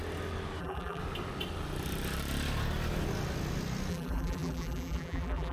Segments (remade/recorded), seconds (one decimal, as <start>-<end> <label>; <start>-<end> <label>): 0.0-0.6 recorded; 0.6-1.0 remade; 1.0-3.9 recorded; 3.9-5.5 remade